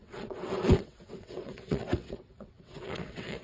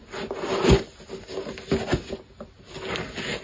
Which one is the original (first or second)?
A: second